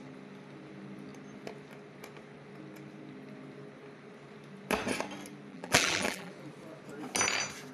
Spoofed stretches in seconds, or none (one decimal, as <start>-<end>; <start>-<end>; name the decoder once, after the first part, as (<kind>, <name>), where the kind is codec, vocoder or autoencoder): 5.5-6.3 (vocoder, BigVGAN v2)